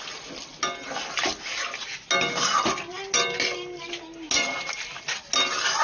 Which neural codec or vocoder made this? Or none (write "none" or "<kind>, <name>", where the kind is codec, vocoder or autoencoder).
none